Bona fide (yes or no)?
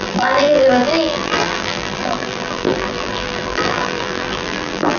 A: no